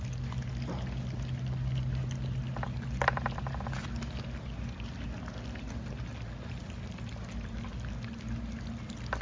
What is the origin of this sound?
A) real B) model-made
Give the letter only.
A